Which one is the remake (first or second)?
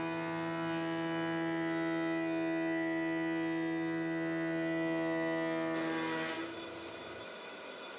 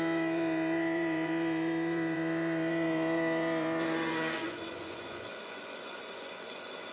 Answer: second